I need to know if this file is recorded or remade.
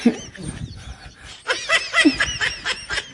recorded